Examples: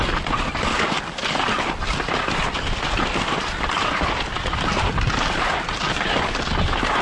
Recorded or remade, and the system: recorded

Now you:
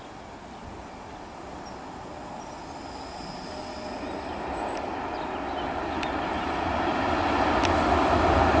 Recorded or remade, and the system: recorded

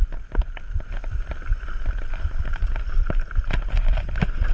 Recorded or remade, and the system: recorded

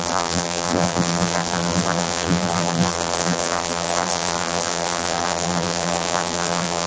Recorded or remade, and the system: remade, vocoder, BigVGAN v2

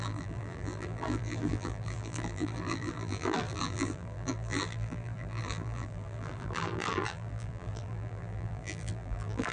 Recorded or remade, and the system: remade, vocoder, BigVGAN v2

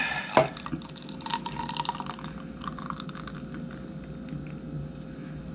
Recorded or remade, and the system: recorded